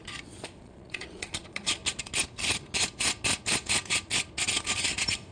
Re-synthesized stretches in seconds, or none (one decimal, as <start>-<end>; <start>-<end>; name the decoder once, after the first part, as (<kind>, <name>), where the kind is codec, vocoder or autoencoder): 0.0-1.8 (vocoder, Vocos)